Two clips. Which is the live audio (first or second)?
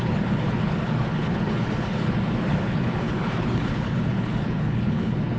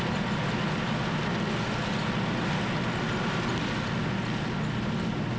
second